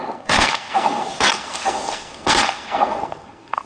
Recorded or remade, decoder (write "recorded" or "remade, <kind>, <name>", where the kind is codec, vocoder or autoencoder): remade, codec, SNAC